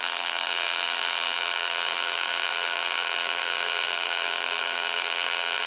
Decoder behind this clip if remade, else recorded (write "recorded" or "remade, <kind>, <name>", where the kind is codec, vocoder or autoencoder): remade, vocoder, BigVGAN v2